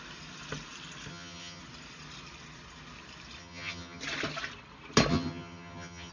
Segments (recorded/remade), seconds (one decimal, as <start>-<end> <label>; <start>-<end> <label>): 0.0-1.1 recorded; 1.1-1.6 remade; 1.6-3.4 recorded; 3.4-4.0 remade; 4.0-5.1 recorded; 5.1-6.1 remade